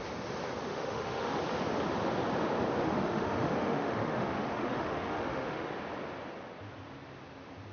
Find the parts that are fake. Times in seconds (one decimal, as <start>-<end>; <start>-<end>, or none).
0.7-1.4; 2.8-5.7